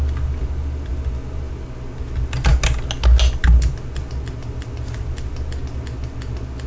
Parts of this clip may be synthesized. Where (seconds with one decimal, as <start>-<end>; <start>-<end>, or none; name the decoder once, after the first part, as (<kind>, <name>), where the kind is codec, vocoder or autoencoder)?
none